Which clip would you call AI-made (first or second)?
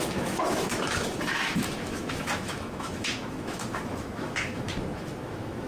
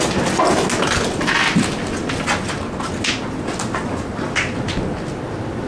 first